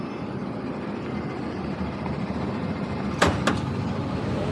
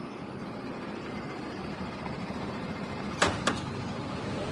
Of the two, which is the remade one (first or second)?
second